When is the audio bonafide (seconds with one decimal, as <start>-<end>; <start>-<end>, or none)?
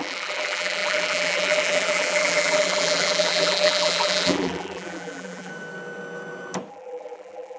5.5-6.7